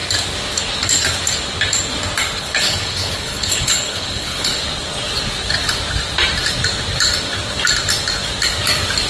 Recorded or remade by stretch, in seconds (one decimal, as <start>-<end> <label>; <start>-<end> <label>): 0.0-2.4 recorded; 2.4-4.5 remade; 4.5-9.1 recorded